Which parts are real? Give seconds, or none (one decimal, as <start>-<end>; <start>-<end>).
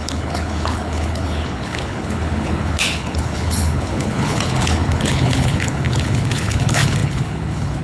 none